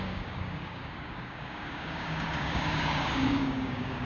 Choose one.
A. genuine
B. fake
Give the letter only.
B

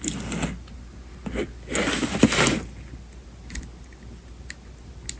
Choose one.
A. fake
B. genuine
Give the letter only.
B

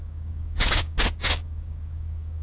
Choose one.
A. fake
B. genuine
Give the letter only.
A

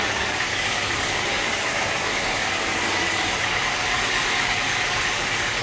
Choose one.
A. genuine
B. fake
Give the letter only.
B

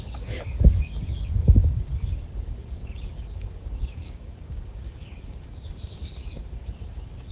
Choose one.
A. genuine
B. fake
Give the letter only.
B